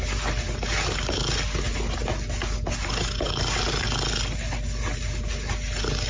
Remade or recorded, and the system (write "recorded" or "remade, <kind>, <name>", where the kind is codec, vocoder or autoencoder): recorded